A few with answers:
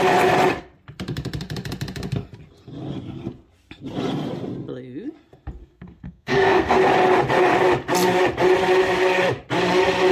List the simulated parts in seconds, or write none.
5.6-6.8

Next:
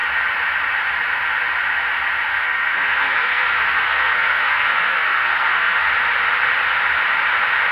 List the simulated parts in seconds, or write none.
2.3-5.9

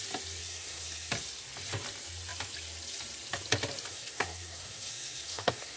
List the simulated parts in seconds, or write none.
0.4-1.1; 3.9-5.8

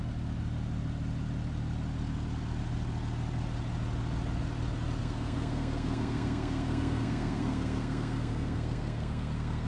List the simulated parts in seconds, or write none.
5.0-9.7

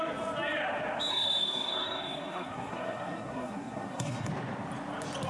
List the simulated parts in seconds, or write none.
1.1-4.3

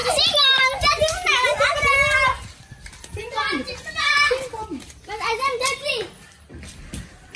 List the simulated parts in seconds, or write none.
none

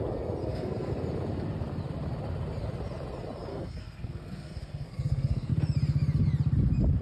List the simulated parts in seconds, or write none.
0.4-0.9; 3.5-5.5

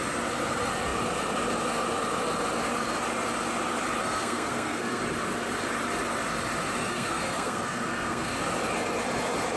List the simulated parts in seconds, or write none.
4.0-5.0; 6.8-8.3